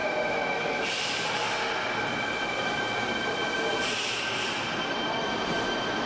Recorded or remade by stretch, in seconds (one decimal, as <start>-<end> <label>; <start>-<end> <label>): 0.0-0.8 remade; 0.8-6.1 recorded